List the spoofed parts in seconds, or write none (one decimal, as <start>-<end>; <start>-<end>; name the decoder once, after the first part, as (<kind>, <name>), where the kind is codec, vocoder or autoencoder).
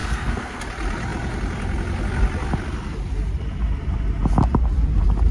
0.0-0.6 (codec, SNAC)